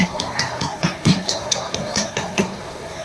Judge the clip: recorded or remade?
remade